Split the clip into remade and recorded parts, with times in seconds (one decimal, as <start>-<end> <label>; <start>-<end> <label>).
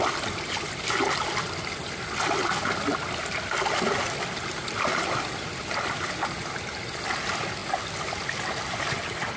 0.0-9.4 recorded